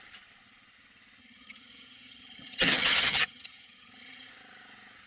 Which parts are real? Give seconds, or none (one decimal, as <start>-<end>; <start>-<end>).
0.0-1.2; 4.3-5.1

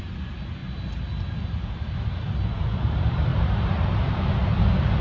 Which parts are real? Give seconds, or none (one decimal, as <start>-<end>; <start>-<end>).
0.0-3.3; 4.6-5.0

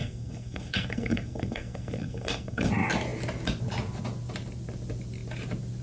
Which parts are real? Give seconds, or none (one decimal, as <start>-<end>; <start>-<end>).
2.7-5.8